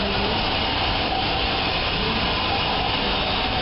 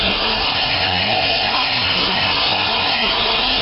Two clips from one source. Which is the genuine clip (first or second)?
first